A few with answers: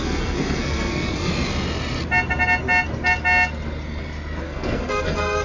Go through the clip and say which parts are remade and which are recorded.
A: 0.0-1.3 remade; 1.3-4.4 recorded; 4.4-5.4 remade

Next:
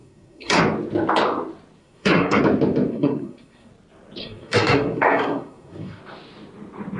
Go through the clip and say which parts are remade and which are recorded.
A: 0.0-0.6 remade; 0.6-1.8 recorded; 1.8-2.4 remade; 2.4-2.9 recorded; 2.9-3.7 remade; 3.7-4.2 recorded; 4.2-6.0 remade; 6.0-7.0 recorded

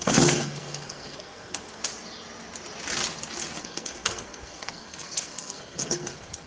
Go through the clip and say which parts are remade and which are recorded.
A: 0.0-1.8 remade; 1.8-3.6 recorded; 3.6-6.5 remade

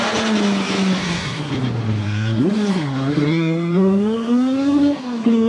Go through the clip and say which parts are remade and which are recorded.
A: 0.0-1.0 recorded; 1.0-1.5 remade; 1.5-2.0 recorded; 2.0-5.5 remade

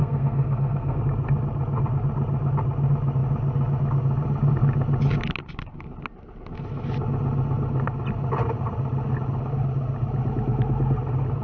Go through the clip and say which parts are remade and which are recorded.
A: 0.0-1.0 remade; 1.0-11.4 recorded

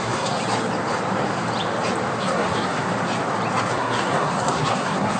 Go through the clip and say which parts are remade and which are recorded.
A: 0.0-0.4 remade; 0.4-2.2 recorded; 2.2-2.9 remade; 2.9-3.7 recorded; 3.7-5.2 remade

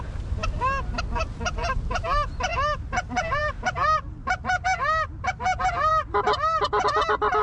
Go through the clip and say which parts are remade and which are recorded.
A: 0.0-7.4 recorded

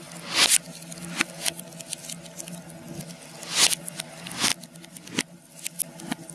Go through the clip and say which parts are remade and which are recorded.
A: 0.0-6.3 recorded